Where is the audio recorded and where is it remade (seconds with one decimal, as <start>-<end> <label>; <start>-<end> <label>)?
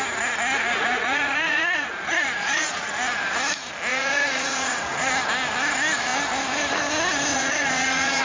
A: 0.0-0.8 recorded; 0.8-2.9 remade; 2.9-3.9 recorded; 3.9-5.1 remade; 5.1-7.3 recorded; 7.3-8.2 remade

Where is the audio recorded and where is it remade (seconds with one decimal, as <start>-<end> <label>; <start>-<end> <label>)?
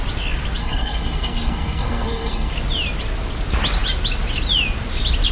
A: 0.0-0.6 recorded; 0.6-2.5 remade; 2.5-5.3 recorded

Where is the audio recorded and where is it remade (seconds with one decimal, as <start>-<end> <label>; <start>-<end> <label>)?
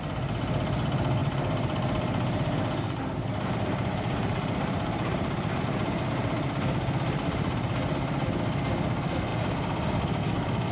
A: 0.0-1.2 recorded; 1.2-5.6 remade; 5.6-9.3 recorded; 9.3-10.2 remade; 10.2-10.7 recorded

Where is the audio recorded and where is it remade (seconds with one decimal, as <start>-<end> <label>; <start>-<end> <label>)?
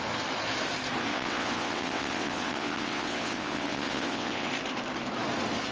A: 0.0-1.1 recorded; 1.1-4.5 remade; 4.5-5.7 recorded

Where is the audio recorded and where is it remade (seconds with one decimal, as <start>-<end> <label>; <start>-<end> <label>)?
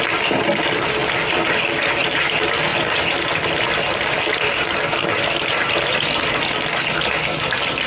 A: 0.0-1.0 recorded; 1.0-2.2 remade; 2.2-2.7 recorded; 2.7-6.4 remade; 6.4-7.9 recorded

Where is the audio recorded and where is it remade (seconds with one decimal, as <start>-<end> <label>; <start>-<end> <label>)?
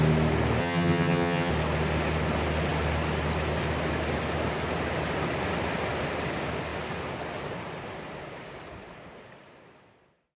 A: 0.0-0.6 recorded; 0.6-1.5 remade; 1.5-10.4 recorded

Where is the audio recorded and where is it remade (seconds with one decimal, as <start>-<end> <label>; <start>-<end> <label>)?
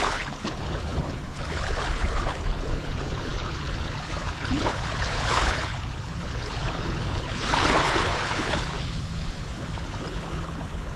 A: 0.0-11.0 remade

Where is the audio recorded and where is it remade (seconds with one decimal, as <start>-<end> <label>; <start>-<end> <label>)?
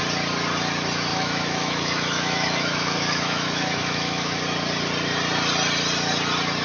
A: 0.0-1.1 recorded; 1.1-4.4 remade; 4.4-6.6 recorded